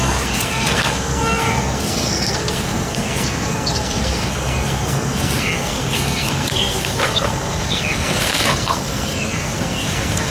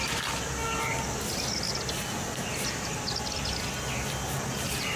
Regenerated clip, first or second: first